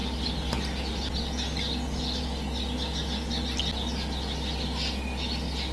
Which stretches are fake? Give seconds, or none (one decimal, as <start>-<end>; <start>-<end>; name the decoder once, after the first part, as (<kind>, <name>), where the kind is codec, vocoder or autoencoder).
none